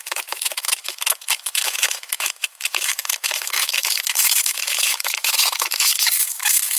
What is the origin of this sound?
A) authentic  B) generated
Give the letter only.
B